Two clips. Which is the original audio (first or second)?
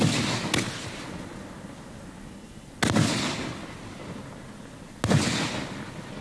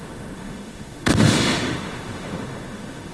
first